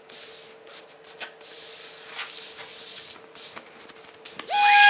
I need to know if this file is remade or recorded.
recorded